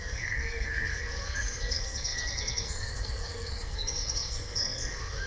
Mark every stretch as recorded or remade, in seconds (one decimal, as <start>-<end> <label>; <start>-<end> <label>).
0.0-5.3 remade